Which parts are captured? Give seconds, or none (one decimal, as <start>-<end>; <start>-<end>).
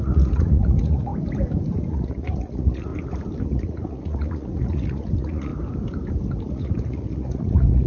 1.1-1.9; 2.9-3.4; 5.5-6.5